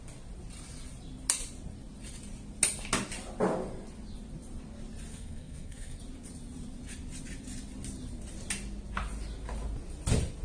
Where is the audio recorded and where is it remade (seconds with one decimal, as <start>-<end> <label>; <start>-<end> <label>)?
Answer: 0.0-5.1 recorded; 5.1-6.0 remade; 6.0-10.4 recorded